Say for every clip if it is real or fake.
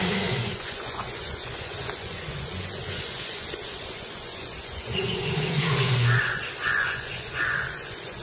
fake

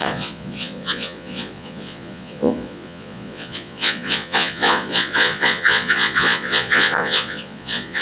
fake